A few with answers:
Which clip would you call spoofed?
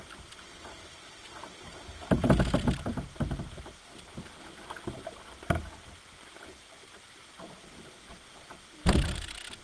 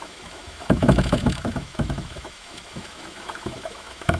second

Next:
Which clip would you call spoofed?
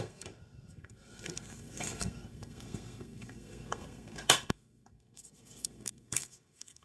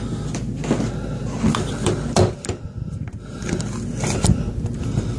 first